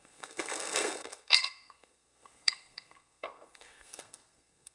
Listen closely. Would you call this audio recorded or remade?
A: remade